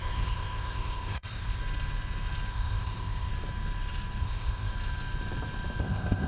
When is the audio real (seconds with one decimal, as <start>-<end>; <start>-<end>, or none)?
1.6-2.5; 3.3-4.2; 4.7-5.8